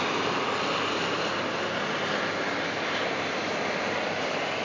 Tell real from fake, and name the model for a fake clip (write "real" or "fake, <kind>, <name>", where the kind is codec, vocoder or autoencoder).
real